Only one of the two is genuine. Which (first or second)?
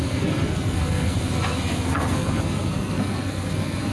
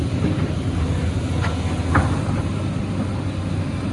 second